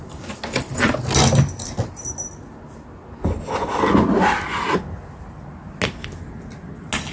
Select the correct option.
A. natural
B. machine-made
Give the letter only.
A